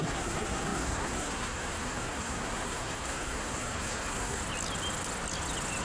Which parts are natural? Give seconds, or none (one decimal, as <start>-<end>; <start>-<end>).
4.4-5.8